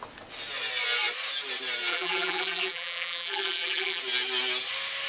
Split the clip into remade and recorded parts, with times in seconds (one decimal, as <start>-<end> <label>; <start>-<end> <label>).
0.0-1.9 recorded; 1.9-4.0 remade; 4.0-5.1 recorded